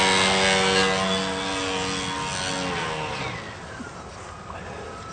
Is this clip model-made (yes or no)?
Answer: no